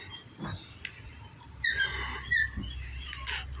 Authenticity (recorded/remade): recorded